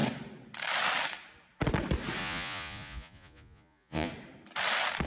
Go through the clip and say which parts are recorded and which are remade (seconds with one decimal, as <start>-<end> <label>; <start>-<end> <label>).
0.0-2.2 recorded; 2.2-4.1 remade; 4.1-5.1 recorded